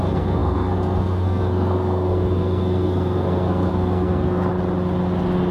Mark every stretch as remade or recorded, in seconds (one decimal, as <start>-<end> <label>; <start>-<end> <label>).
0.0-4.5 remade; 4.5-5.5 recorded